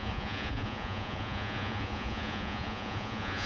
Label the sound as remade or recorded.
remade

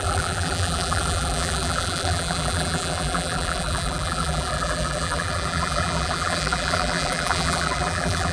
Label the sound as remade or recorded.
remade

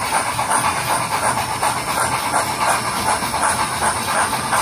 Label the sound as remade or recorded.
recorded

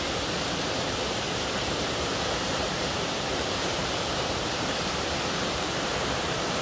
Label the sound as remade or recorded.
remade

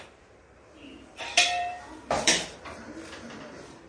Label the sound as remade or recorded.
remade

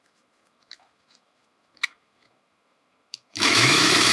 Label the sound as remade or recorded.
remade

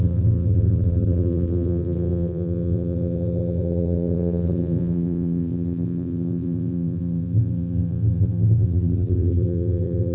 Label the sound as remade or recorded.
remade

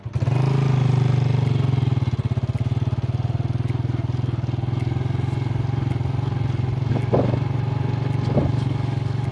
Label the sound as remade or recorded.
recorded